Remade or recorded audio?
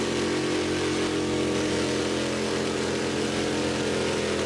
recorded